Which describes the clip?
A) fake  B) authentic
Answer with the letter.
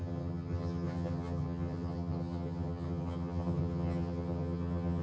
A